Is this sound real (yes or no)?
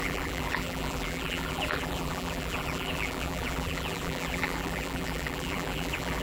no